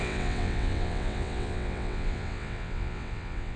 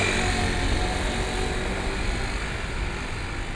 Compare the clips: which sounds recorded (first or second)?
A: second